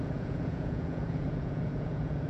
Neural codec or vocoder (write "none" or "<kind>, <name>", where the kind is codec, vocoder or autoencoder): vocoder, Vocos